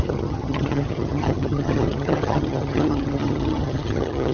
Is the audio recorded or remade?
remade